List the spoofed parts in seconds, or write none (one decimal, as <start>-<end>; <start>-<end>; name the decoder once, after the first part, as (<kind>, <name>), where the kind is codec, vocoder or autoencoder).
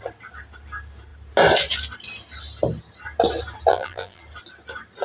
3.7-4.2 (vocoder, BigVGAN v2)